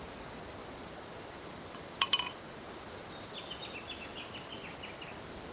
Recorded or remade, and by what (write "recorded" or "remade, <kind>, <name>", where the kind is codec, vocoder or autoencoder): recorded